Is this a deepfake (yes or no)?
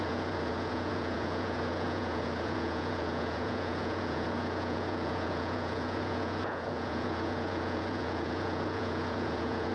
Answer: yes